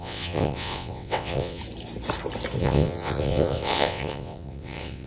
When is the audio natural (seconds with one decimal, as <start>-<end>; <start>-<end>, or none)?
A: 1.6-2.6